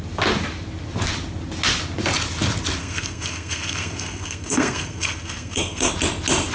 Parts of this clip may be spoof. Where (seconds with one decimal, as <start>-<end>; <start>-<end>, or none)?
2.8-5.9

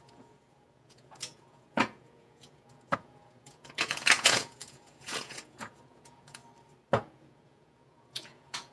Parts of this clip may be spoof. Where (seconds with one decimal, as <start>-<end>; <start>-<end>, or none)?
0.0-6.4; 7.0-8.7

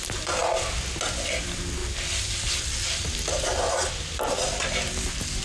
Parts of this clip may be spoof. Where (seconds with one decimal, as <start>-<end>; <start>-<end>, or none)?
none

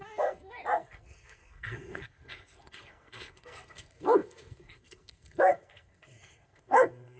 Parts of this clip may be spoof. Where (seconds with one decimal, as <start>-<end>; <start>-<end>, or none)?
0.0-7.2